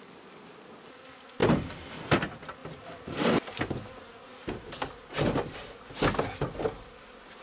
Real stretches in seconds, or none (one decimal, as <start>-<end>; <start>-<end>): 0.0-1.4; 2.0-2.6; 3.7-7.4